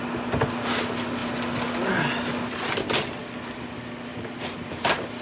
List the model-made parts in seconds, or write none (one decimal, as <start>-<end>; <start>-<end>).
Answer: none